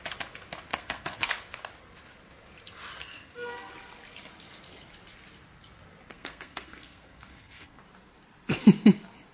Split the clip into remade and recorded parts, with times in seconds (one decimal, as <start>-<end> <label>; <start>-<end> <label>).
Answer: 0.0-0.7 recorded; 0.7-1.3 remade; 1.3-3.0 recorded; 3.0-3.7 remade; 3.7-6.1 recorded; 6.1-7.8 remade; 7.8-9.3 recorded